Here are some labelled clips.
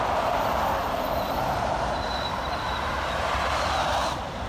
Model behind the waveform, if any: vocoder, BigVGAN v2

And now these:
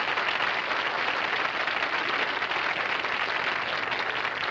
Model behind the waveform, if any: none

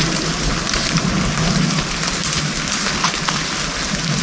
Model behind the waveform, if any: none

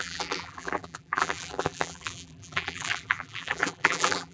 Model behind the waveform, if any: vocoder, BigVGAN v2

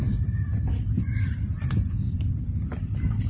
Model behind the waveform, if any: vocoder, BigVGAN v2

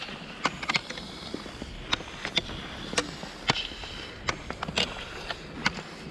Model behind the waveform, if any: none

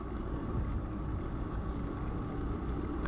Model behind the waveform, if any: none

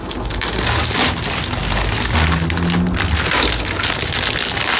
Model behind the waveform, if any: none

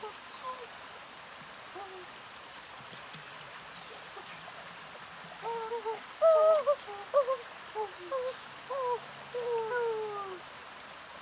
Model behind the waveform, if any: none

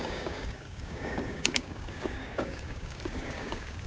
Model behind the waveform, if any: codec, DAC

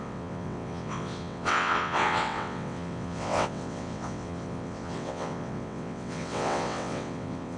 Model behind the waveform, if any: vocoder, WaveNeXt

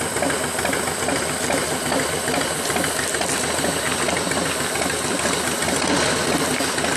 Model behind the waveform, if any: none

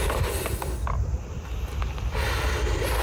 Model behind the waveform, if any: none